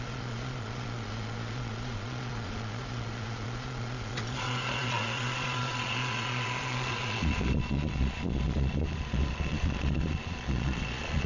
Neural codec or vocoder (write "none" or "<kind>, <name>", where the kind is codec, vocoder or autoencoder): vocoder, Vocos